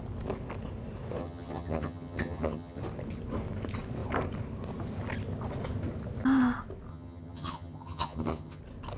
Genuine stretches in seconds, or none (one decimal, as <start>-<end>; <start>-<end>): 0.0-1.2; 2.8-6.9; 8.6-9.0

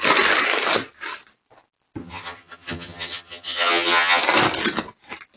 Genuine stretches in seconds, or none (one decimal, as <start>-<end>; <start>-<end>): 0.0-2.0; 4.2-5.4

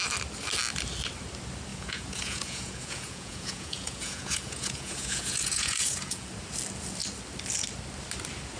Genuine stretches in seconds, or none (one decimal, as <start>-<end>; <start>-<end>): 0.0-1.7; 6.3-8.6